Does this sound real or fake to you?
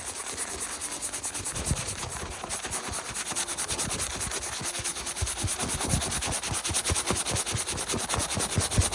real